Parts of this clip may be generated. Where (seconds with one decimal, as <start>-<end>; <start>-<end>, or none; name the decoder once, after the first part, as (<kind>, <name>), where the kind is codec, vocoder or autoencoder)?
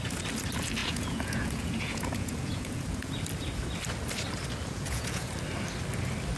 0.8-3.1 (vocoder, Vocos); 4.7-5.3